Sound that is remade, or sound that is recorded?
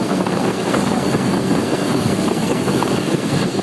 remade